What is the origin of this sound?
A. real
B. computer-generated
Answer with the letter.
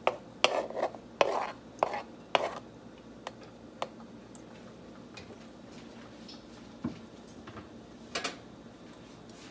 A